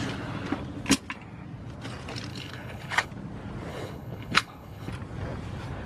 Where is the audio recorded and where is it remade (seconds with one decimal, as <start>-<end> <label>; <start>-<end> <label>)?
0.0-2.3 recorded; 2.3-3.1 remade; 3.1-3.7 recorded; 3.7-4.9 remade; 4.9-5.9 recorded